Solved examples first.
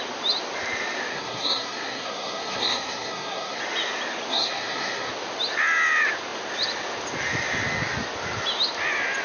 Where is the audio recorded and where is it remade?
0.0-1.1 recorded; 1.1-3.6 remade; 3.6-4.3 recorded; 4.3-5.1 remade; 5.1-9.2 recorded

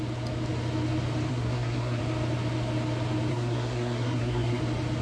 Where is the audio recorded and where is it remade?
0.0-1.3 recorded; 1.3-2.0 remade; 2.0-3.3 recorded; 3.3-4.6 remade; 4.6-5.0 recorded

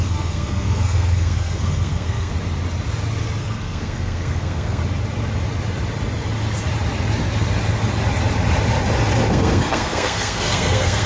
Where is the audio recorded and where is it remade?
0.0-2.3 remade; 2.3-3.4 recorded; 3.4-4.8 remade; 4.8-9.3 recorded; 9.3-11.1 remade

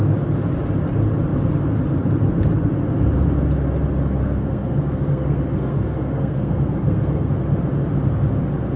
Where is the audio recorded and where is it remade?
0.0-4.2 recorded; 4.2-7.3 remade; 7.3-8.8 recorded

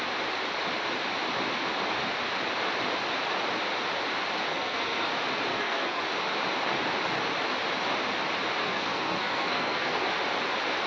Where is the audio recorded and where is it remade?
0.0-4.5 recorded; 4.5-5.1 remade; 5.1-5.5 recorded; 5.5-6.0 remade; 6.0-8.6 recorded; 8.6-10.1 remade; 10.1-10.9 recorded

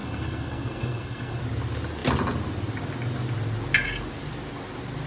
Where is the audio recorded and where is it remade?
0.0-1.4 remade; 1.4-5.1 recorded

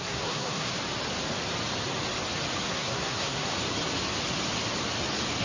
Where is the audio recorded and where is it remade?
0.0-0.7 remade; 0.7-2.7 recorded; 2.7-3.5 remade; 3.5-5.4 recorded